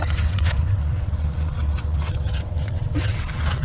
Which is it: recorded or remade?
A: remade